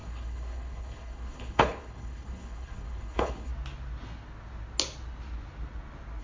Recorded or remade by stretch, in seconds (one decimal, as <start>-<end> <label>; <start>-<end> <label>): 0.0-3.5 remade; 3.5-6.2 recorded